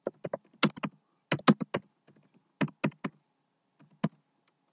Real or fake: real